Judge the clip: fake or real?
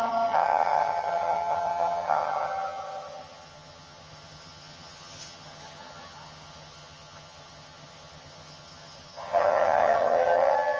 fake